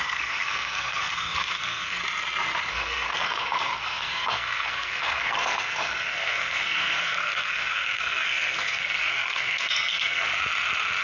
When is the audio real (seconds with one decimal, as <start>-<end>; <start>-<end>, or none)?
2.0-2.7; 10.3-11.0